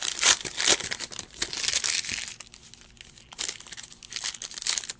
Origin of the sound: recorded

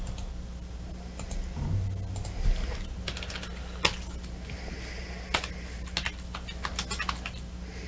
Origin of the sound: recorded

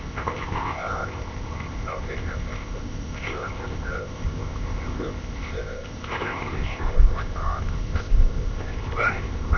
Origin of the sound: remade